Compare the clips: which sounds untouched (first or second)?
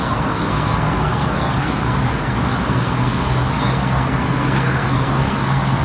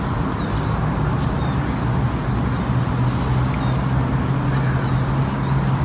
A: second